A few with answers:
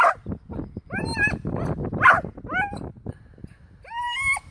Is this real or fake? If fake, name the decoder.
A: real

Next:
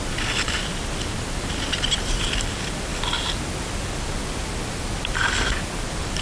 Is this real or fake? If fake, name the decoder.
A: real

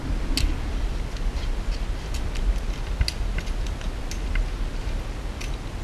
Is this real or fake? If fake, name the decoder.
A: real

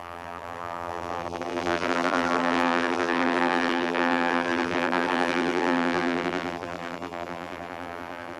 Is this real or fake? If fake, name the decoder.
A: fake, vocoder, BigVGAN v2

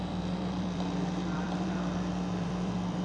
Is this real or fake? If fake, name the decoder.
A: fake, vocoder, BigVGAN v2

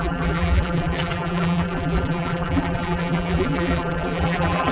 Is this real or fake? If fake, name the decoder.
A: fake, vocoder, BigVGAN v2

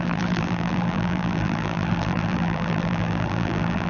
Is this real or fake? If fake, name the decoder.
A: fake, vocoder, BigVGAN v2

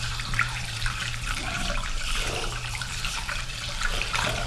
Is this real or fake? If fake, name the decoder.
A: fake, vocoder, BigVGAN v2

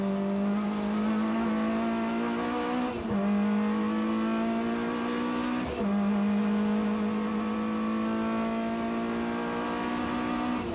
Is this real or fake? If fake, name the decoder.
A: real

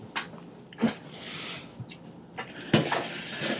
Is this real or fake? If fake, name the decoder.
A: real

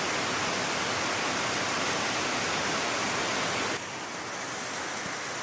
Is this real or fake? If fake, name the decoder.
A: real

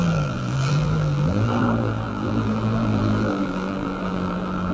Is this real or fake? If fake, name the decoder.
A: fake, vocoder, BigVGAN v2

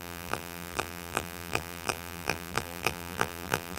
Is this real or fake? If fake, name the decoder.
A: fake, vocoder, BigVGAN v2